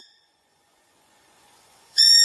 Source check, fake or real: fake